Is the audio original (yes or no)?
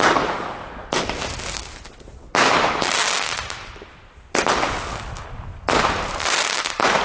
yes